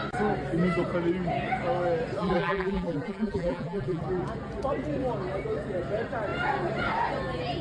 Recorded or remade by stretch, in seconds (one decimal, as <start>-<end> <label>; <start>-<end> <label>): 0.0-2.2 recorded; 2.2-4.0 remade; 4.0-7.6 recorded